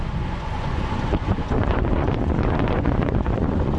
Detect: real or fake fake